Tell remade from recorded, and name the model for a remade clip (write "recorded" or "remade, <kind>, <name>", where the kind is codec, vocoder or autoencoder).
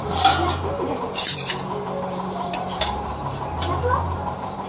remade, vocoder, BigVGAN v2